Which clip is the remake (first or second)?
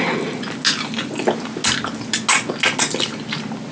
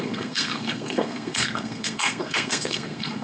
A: second